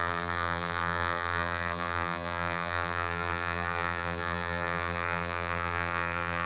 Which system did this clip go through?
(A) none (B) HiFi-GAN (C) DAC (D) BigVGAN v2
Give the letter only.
D